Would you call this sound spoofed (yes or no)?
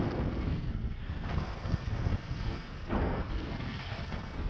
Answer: yes